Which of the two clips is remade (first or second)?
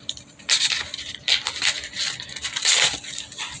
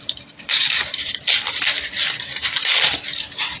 second